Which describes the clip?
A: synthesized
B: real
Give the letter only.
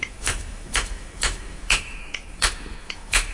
A